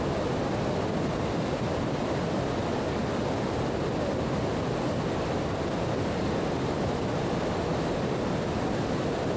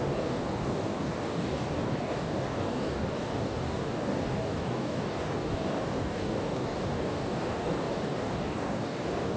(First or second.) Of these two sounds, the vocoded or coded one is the second